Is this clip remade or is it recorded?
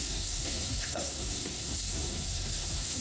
remade